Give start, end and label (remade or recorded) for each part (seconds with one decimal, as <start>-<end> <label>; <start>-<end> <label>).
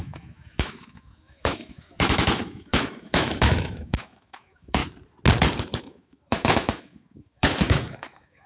0.0-4.8 remade; 4.8-5.8 recorded; 5.8-8.5 remade